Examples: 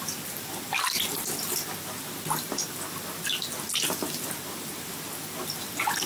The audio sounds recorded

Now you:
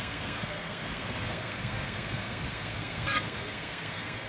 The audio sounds remade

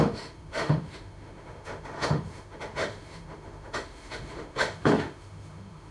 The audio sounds remade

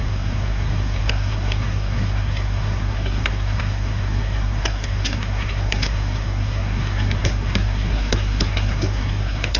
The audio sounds remade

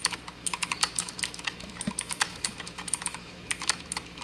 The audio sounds remade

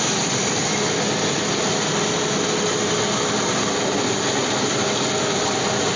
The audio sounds recorded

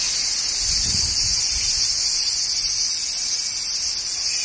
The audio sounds recorded